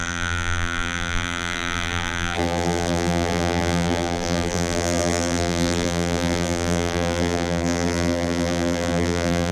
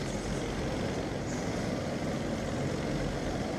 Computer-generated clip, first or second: first